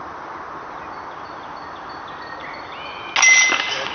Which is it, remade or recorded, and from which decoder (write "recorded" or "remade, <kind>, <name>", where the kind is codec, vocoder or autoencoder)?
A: recorded